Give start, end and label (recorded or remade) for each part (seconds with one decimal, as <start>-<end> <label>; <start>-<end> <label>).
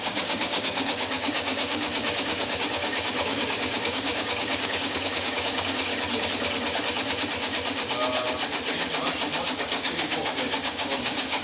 0.0-5.9 remade; 5.9-9.6 recorded; 9.6-11.4 remade